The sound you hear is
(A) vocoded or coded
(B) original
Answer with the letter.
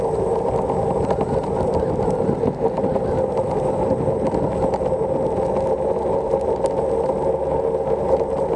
B